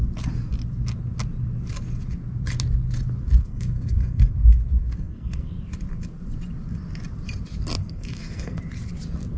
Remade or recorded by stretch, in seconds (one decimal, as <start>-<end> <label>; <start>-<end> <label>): 0.0-3.4 recorded; 3.4-5.5 remade; 5.5-7.8 recorded; 7.8-8.6 remade; 8.6-9.4 recorded